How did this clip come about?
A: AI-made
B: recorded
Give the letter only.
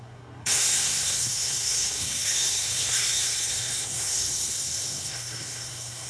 A